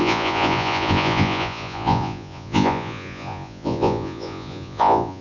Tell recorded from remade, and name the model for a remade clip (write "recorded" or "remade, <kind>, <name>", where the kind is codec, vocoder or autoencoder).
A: remade, vocoder, Vocos